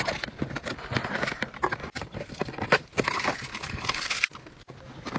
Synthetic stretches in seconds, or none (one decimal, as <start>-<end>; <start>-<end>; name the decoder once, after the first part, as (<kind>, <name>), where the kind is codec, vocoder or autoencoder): 1.0-4.1 (vocoder, BigVGAN v2)